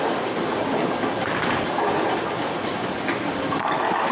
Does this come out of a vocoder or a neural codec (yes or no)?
no